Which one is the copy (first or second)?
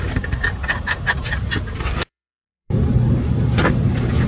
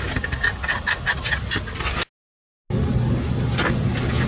first